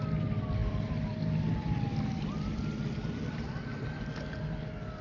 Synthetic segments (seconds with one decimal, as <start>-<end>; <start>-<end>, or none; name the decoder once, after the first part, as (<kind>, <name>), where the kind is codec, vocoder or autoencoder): 0.6-1.1 (vocoder, BigVGAN v2); 1.6-2.6; 3.0-3.9